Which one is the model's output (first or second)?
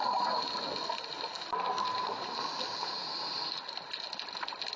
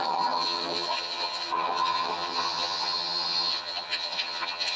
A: second